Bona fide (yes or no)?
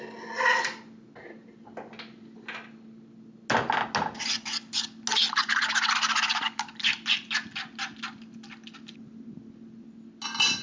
yes